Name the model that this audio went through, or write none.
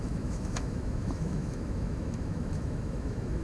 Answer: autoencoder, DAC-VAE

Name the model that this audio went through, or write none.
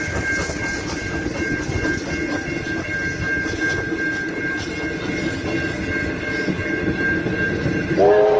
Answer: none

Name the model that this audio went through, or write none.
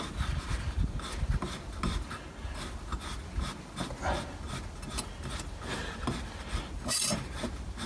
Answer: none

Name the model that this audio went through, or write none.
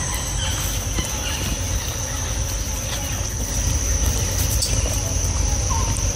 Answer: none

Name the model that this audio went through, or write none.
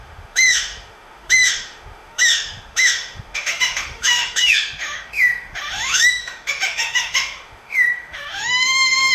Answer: autoencoder, DAC-VAE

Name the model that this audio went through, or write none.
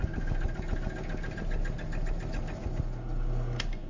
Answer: none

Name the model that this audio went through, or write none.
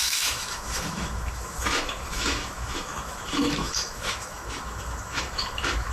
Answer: autoencoder, DAC-VAE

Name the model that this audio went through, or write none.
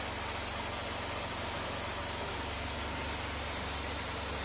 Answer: none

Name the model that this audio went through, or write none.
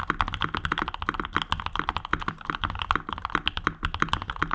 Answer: none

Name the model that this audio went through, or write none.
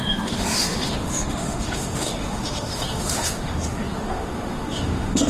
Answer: autoencoder, DAC-VAE